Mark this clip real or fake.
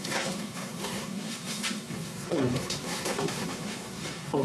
fake